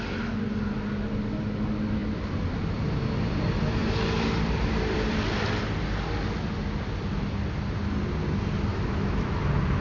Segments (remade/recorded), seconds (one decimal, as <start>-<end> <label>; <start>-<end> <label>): 0.0-8.7 recorded; 8.7-9.4 remade; 9.4-9.8 recorded